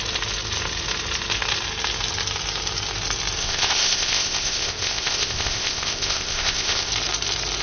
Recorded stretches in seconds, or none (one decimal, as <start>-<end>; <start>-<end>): 0.0-3.4; 6.9-7.6